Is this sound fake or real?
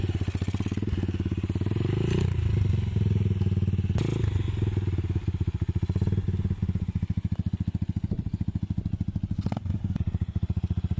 real